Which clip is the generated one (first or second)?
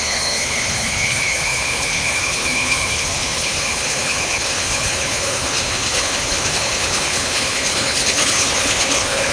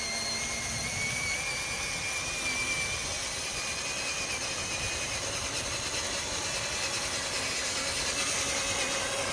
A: first